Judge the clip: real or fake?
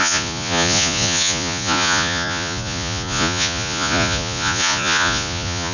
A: fake